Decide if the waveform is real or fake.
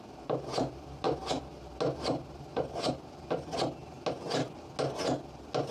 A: real